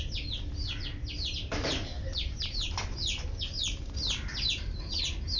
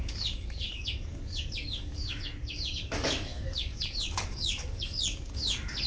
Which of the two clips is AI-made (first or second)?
second